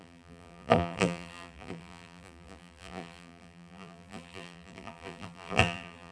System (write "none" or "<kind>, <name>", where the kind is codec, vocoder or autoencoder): vocoder, BigVGAN v2